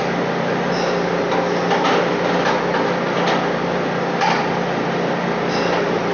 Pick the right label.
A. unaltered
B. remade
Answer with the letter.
A